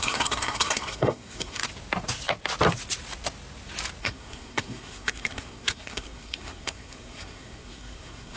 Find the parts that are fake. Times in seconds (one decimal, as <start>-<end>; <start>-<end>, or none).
0.0-1.6; 4.0-8.4

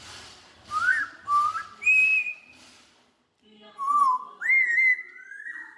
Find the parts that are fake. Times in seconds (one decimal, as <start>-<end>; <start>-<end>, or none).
none

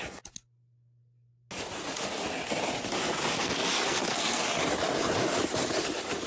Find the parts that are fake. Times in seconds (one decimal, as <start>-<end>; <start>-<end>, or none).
3.4-4.4